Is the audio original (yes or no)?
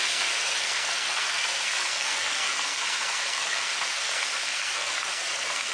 no